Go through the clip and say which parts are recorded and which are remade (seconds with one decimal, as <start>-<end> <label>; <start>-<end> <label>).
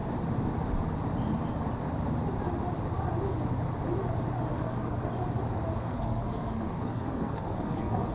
0.0-4.5 recorded; 4.5-5.1 remade; 5.1-5.8 recorded; 5.8-8.1 remade